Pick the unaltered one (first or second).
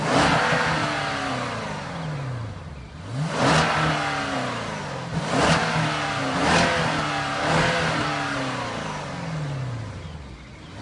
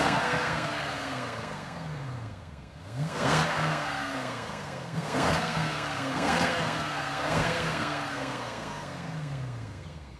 first